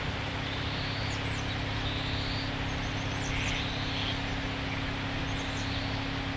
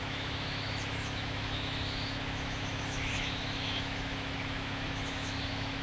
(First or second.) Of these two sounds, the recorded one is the first